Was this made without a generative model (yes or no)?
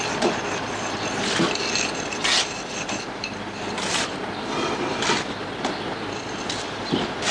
yes